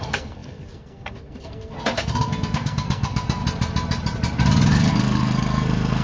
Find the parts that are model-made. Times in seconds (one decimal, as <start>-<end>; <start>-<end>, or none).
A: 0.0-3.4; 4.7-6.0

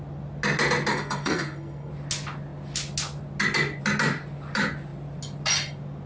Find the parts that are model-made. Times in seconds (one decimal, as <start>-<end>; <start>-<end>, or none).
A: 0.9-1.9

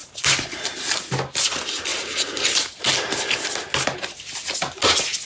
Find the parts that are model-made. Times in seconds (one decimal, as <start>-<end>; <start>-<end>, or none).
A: 0.0-0.7; 1.9-3.5

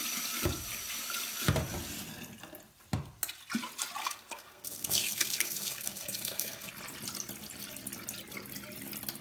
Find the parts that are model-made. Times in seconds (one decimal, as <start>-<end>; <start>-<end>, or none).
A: 4.0-6.7

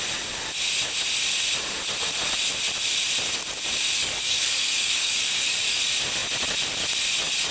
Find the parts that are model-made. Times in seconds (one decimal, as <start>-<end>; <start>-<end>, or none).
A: 4.0-5.8

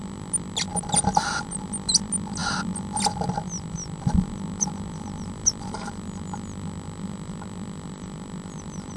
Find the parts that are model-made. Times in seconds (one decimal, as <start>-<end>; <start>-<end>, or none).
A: none